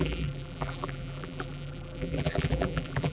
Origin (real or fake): fake